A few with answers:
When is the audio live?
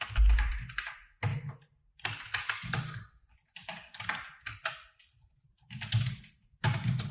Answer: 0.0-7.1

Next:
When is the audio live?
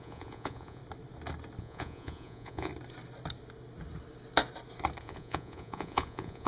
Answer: 0.8-1.6; 2.7-5.0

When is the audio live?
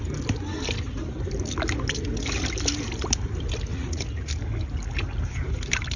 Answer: 0.0-3.7; 4.3-6.0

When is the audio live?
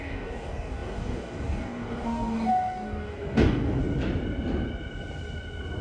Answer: 3.8-5.8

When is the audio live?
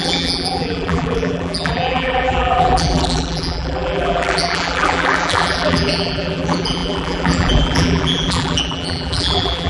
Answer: none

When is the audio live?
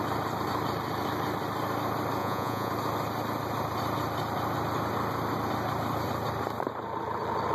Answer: 0.0-2.2; 2.7-7.5